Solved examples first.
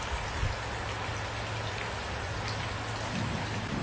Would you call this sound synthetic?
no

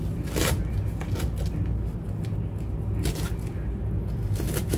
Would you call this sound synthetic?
no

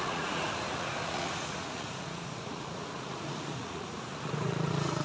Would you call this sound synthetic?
yes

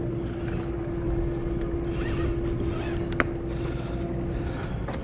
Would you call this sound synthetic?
no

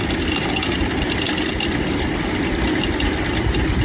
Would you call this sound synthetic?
no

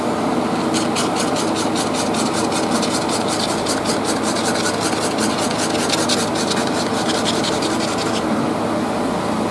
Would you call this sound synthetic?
no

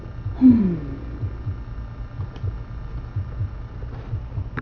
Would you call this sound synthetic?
no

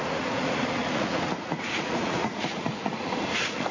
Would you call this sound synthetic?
yes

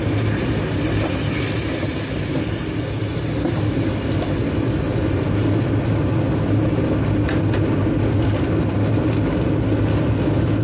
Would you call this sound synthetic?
no